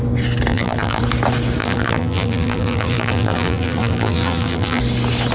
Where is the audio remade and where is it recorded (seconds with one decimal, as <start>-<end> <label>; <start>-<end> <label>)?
0.0-0.5 recorded; 0.5-1.0 remade; 1.0-1.6 recorded; 1.6-4.8 remade; 4.8-5.3 recorded